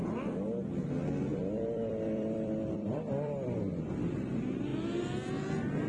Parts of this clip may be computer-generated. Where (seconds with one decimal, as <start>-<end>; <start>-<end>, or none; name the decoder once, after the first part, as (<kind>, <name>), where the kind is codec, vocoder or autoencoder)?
1.3-3.6 (vocoder, BigVGAN v2); 4.7-5.3